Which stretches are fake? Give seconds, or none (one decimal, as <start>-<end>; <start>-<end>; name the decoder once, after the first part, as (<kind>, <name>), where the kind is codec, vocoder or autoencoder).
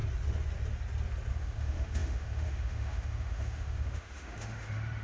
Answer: 1.3-5.0 (autoencoder, DAC-VAE)